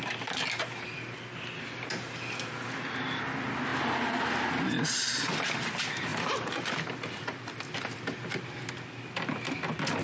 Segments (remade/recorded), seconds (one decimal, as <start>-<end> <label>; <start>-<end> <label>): 0.0-6.1 recorded; 6.1-8.6 remade; 8.6-10.0 recorded